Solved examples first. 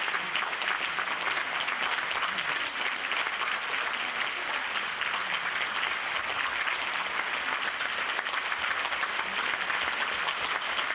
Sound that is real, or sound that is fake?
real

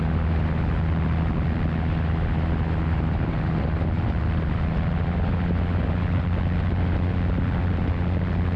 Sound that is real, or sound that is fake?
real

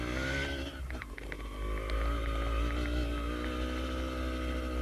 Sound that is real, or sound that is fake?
real